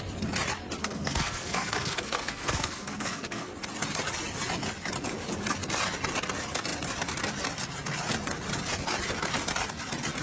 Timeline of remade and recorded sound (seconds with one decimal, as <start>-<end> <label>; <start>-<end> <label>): 0.0-0.8 recorded; 0.8-3.5 remade; 3.5-10.2 recorded